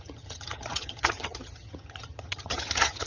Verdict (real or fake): fake